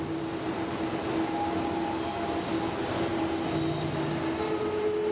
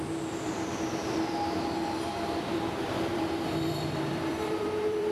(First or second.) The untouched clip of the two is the first